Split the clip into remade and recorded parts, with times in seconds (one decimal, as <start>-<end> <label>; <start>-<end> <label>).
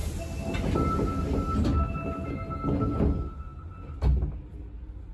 0.0-5.1 recorded